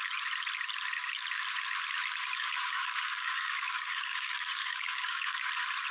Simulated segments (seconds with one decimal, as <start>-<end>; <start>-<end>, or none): 2.2-5.5

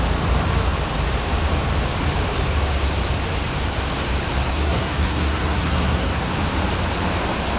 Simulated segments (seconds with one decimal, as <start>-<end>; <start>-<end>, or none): 4.5-6.3